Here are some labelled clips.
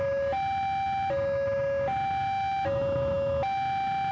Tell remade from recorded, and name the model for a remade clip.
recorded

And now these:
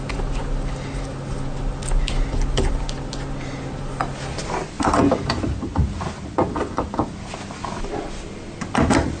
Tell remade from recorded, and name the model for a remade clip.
recorded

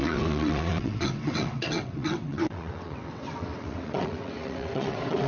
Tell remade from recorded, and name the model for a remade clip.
remade, vocoder, WaveNeXt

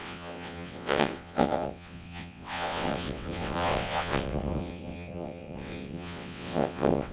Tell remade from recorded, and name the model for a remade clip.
remade, vocoder, WaveNeXt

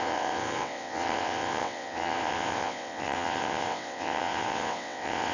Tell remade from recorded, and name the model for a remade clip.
remade, vocoder, WaveNeXt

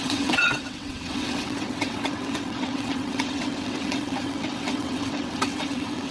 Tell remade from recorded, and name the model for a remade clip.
remade, vocoder, WaveNeXt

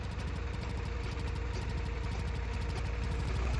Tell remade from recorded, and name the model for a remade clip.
recorded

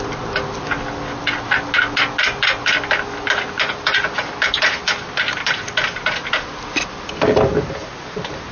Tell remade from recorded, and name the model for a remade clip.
recorded